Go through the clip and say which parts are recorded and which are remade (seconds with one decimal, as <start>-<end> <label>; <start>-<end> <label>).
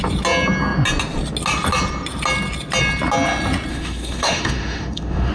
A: 0.0-3.7 recorded; 3.7-5.3 remade